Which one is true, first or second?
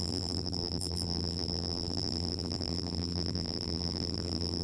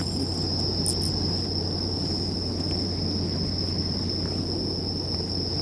second